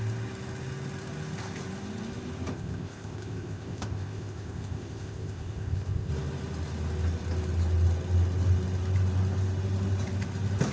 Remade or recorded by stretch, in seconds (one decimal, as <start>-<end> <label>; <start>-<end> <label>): 0.0-2.5 recorded; 2.5-6.1 remade; 6.1-10.7 recorded